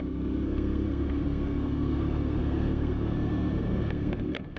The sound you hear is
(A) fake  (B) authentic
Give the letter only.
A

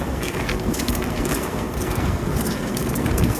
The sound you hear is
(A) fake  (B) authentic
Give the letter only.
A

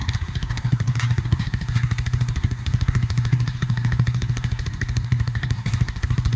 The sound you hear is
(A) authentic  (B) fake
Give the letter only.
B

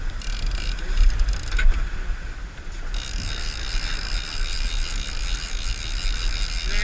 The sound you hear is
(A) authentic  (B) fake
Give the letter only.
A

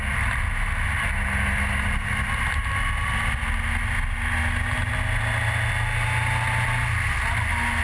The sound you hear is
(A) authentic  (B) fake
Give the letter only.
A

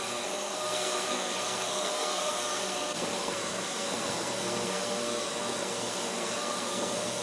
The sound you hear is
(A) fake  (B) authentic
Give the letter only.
A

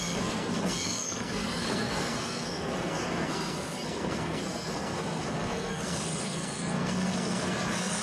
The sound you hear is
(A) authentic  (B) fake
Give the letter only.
B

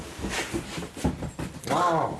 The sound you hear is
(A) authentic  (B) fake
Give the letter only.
A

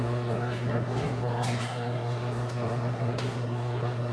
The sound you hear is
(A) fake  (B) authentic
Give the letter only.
A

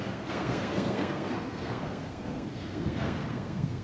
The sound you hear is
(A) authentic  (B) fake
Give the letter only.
B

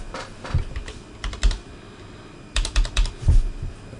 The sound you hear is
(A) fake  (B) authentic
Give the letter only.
B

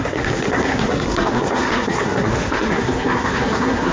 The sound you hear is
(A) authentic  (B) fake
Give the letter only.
B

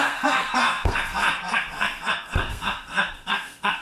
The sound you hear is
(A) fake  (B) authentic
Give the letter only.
A